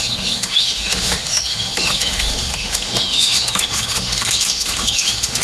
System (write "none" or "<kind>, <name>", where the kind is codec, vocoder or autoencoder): autoencoder, DAC-VAE